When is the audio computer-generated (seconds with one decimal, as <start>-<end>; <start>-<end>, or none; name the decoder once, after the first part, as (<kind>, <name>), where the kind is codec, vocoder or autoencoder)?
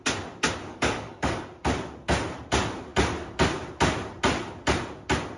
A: 0.7-1.4 (codec, DAC)